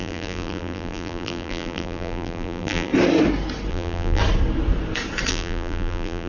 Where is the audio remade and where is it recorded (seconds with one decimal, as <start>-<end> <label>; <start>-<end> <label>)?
0.0-2.9 remade; 2.9-3.7 recorded; 3.7-4.2 remade; 4.2-5.3 recorded; 5.3-6.3 remade